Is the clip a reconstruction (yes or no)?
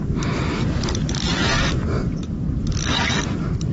no